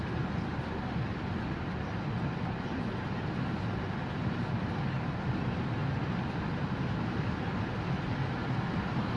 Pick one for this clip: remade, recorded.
recorded